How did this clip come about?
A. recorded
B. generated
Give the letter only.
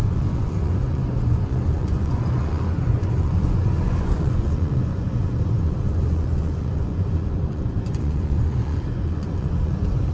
B